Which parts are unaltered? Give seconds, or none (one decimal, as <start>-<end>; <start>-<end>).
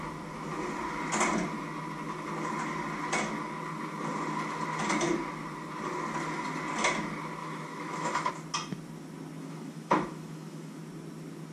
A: 0.0-7.4; 8.3-9.4; 10.8-11.5